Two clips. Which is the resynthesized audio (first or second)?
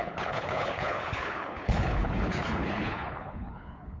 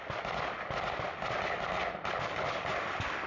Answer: first